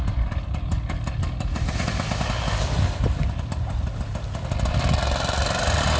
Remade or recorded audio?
recorded